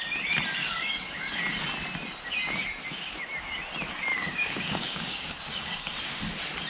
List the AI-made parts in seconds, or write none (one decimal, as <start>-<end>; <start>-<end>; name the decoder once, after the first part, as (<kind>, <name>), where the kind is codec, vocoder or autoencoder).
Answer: 0.6-1.4 (codec, DAC); 4.1-5.9